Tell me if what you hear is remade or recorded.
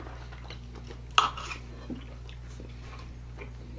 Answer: recorded